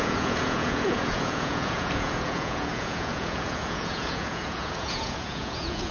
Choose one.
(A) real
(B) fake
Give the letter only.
B